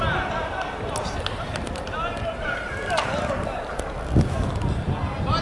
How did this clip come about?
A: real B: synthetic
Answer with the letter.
A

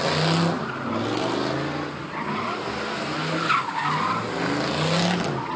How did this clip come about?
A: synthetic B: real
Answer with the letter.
B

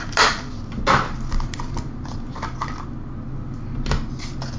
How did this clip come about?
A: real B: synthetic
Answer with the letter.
A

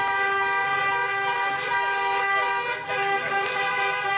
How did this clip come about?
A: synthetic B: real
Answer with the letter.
B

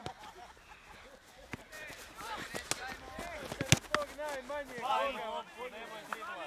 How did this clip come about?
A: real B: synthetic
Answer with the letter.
A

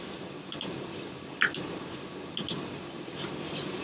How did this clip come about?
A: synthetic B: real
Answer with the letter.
B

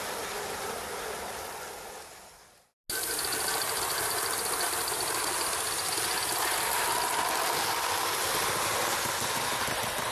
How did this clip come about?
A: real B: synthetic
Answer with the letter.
A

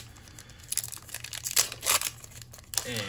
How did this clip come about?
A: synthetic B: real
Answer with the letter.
B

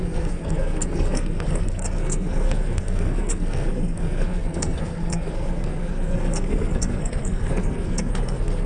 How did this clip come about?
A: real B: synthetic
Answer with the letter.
B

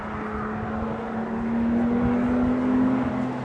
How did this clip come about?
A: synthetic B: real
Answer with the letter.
B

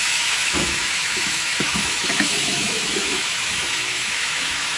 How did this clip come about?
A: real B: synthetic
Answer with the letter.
B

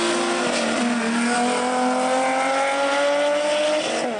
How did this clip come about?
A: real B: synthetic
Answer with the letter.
A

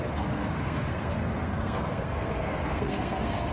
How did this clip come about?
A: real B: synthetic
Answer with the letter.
B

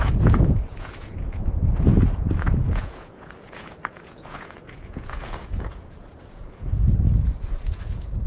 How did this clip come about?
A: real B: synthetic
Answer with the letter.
B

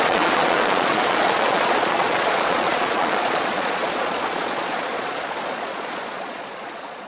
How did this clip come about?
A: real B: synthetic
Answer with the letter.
B